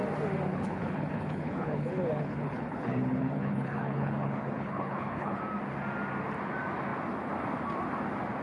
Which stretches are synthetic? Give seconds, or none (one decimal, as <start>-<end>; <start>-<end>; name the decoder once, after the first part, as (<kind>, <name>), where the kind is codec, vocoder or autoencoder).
0.5-5.4 (codec, HILCodec)